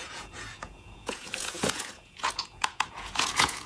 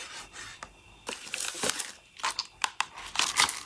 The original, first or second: second